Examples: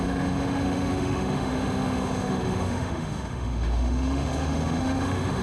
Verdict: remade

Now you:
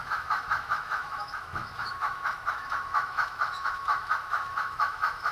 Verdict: remade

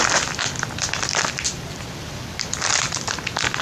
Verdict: remade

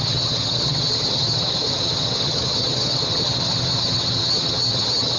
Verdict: remade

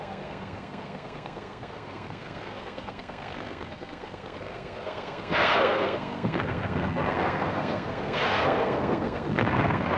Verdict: remade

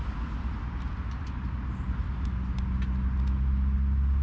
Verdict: recorded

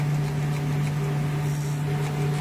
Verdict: recorded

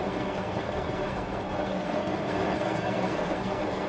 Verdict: remade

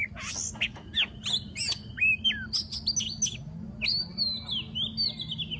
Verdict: recorded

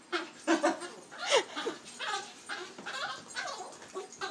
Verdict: recorded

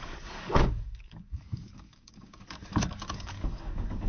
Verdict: remade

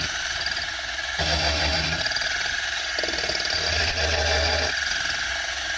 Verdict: recorded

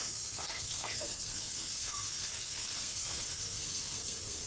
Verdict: remade